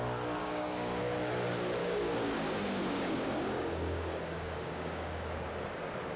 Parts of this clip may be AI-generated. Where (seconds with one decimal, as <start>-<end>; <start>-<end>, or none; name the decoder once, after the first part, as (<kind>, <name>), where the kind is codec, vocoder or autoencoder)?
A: 0.4-1.0 (codec, DAC); 1.8-5.5